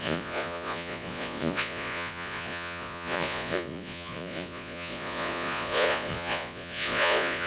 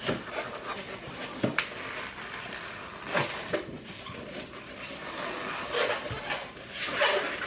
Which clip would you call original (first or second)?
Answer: second